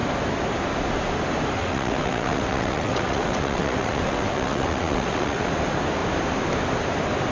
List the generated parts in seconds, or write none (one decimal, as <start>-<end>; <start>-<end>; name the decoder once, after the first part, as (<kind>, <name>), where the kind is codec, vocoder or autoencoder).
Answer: 1.6-5.5 (vocoder, WaveNeXt)